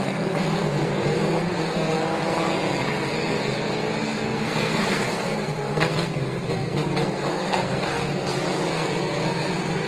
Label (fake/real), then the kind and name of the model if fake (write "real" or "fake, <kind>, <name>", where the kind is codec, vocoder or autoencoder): fake, codec, SNAC